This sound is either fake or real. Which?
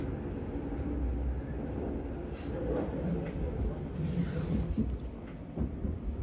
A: real